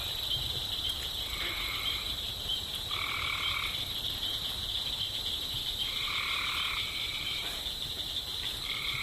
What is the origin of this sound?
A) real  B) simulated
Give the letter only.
B